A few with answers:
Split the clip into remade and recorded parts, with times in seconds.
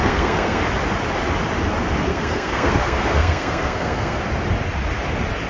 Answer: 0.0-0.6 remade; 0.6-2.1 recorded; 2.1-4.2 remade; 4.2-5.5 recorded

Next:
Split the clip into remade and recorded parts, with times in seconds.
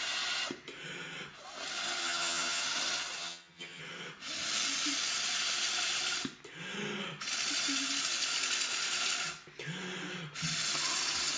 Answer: 0.0-2.0 recorded; 2.0-2.6 remade; 2.6-3.2 recorded; 3.2-3.8 remade; 3.8-11.4 recorded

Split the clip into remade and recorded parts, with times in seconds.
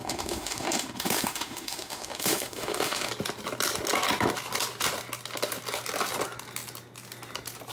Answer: 0.0-3.1 remade; 3.1-7.7 recorded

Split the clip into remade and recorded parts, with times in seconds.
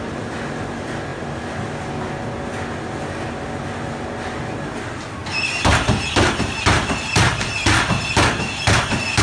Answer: 0.0-9.2 recorded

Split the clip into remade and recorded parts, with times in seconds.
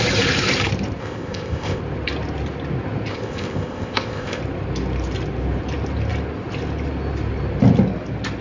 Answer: 0.0-1.0 recorded; 1.0-1.8 remade; 1.8-3.1 recorded; 3.1-4.4 remade; 4.4-8.4 recorded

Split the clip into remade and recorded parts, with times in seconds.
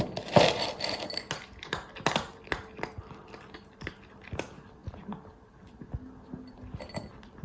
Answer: 0.0-7.4 recorded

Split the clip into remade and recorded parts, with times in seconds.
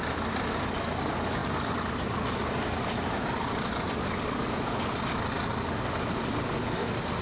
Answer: 0.0-7.2 recorded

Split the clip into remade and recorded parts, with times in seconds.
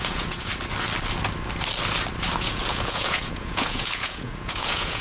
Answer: 0.0-0.5 remade; 0.5-2.4 recorded; 2.4-5.0 remade